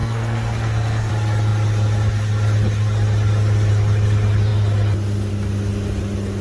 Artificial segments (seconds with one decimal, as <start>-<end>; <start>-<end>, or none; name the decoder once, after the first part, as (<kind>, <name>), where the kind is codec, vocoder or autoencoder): 0.0-1.1 (codec, SNAC)